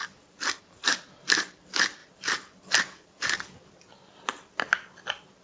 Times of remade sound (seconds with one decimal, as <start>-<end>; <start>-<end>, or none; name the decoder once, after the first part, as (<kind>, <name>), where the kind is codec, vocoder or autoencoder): 0.0-0.6 (vocoder, BigVGAN v2)